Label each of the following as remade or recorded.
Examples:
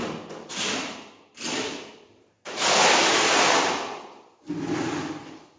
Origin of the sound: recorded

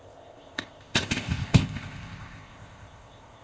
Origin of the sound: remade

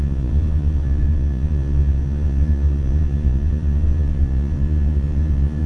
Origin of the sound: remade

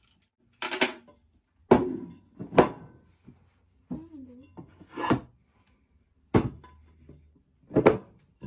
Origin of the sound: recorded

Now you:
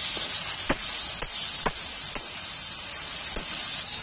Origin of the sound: recorded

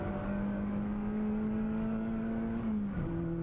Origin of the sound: remade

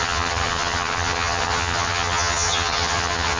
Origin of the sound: remade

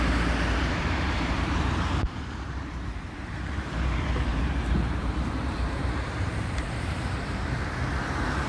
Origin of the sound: remade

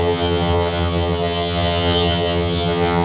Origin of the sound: remade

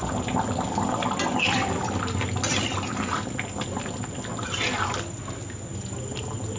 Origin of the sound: recorded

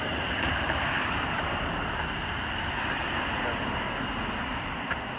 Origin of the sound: recorded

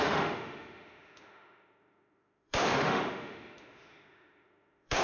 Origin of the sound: remade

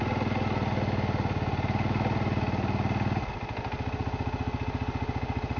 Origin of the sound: recorded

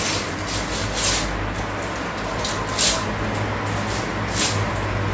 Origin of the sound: recorded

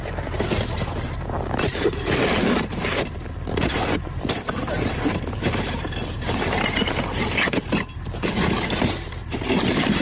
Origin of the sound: remade